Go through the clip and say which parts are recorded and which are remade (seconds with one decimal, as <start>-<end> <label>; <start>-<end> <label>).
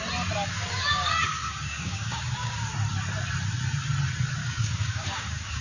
0.0-0.5 recorded; 0.5-2.7 remade; 2.7-4.4 recorded; 4.4-5.6 remade